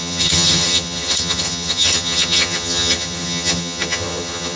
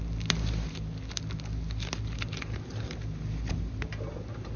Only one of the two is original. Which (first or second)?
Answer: second